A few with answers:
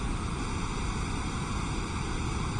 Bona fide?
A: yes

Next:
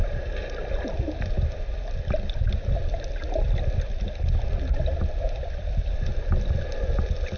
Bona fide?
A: yes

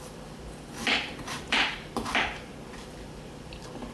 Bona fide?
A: no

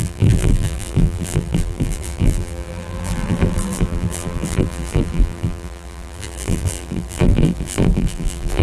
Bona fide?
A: no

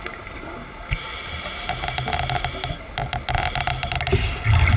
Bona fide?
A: yes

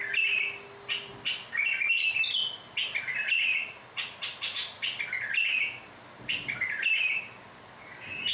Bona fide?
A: yes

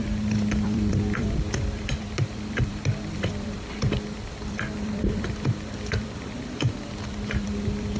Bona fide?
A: no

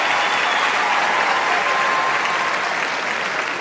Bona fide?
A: yes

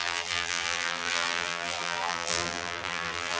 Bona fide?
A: no